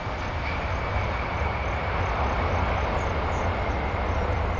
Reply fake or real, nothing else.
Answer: real